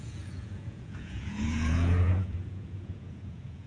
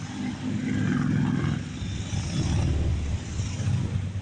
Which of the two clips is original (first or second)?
second